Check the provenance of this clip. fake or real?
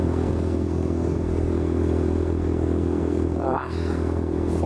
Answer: fake